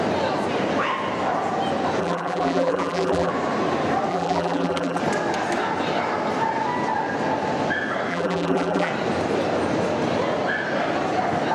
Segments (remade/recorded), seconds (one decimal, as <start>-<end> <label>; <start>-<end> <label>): 0.0-2.0 recorded; 2.0-3.3 remade; 3.3-4.1 recorded; 4.1-5.0 remade; 5.0-8.1 recorded; 8.1-8.9 remade; 8.9-11.5 recorded